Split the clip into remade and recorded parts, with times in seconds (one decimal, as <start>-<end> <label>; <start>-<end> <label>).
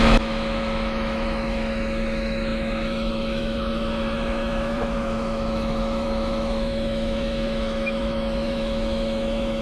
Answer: 0.0-9.6 remade